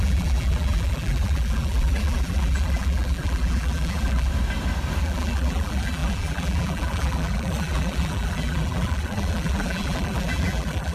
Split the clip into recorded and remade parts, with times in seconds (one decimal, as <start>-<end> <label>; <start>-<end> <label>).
0.0-4.3 remade; 4.3-5.0 recorded; 5.0-10.9 remade